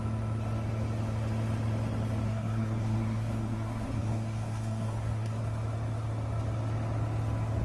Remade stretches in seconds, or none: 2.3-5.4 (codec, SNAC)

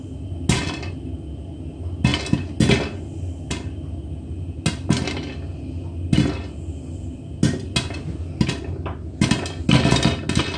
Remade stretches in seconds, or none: none

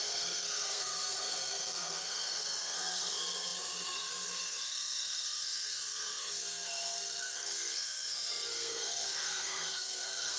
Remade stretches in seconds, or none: 0.0-10.4 (codec, SNAC)

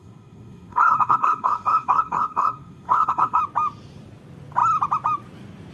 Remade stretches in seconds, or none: 0.0-3.4 (codec, SNAC)

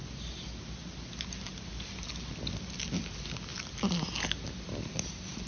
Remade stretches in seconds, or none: none